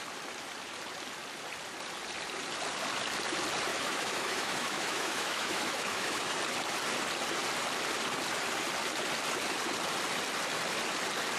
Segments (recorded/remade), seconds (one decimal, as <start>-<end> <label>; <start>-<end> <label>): 0.0-3.7 recorded; 3.7-6.4 remade; 6.4-11.4 recorded